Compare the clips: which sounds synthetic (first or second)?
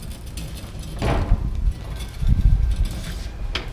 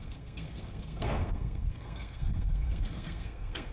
second